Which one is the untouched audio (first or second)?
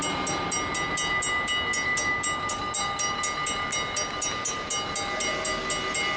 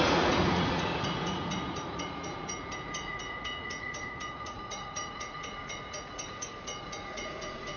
first